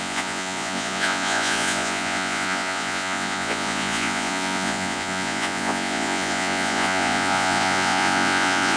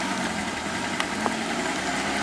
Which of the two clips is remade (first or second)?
first